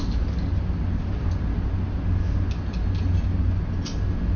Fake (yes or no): no